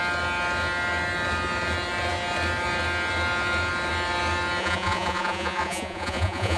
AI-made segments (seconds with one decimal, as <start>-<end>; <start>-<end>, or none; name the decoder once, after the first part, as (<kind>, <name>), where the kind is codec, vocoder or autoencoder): 4.6-6.6 (vocoder, Vocos)